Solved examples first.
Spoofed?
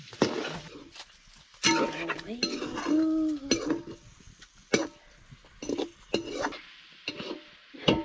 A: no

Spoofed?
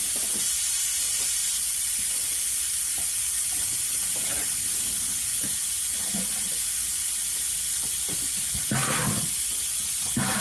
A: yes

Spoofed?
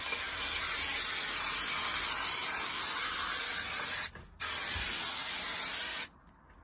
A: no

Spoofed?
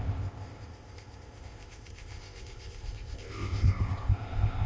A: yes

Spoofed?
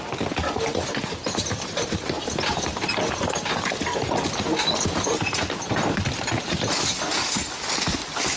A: no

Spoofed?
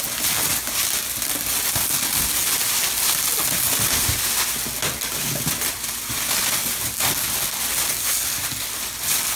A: no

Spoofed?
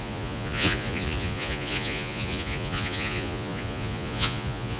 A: yes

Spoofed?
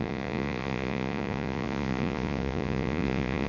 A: yes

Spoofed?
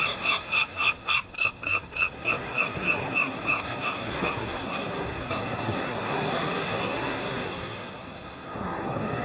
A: yes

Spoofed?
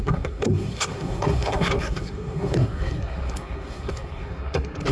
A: yes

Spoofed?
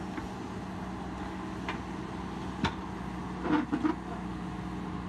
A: no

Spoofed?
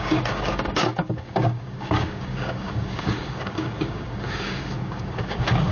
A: yes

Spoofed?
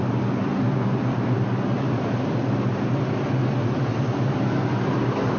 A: no